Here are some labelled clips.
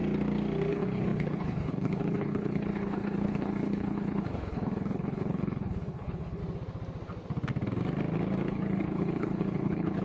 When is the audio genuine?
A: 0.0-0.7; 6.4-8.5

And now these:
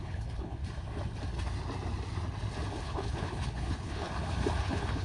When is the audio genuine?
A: 0.6-2.8; 4.1-4.6

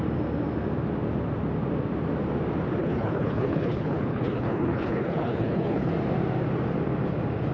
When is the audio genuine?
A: 0.0-2.8; 5.9-7.5

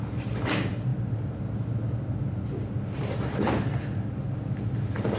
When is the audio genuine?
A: 0.0-5.2

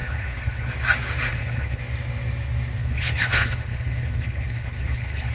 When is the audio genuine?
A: 0.7-1.3; 1.8-2.8

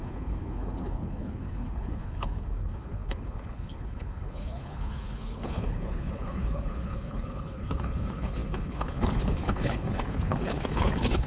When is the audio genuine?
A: none

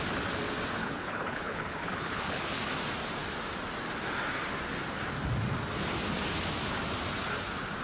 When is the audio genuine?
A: 0.0-0.8; 2.6-7.8